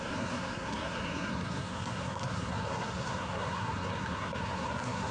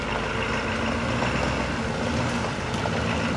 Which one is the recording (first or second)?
second